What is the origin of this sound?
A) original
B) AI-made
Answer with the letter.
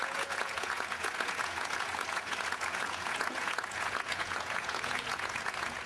B